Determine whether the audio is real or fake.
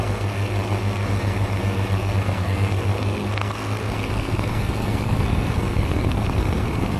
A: fake